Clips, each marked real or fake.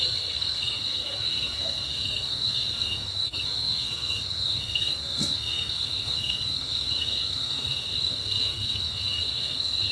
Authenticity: fake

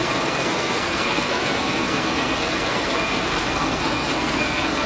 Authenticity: fake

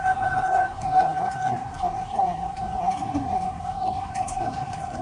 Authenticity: fake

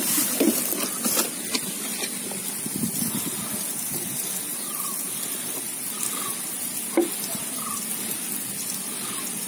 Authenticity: real